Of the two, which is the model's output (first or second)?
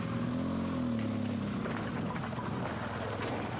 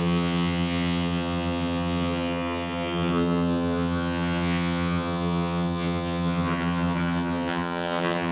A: second